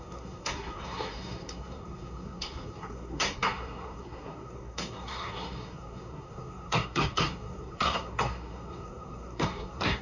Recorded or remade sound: remade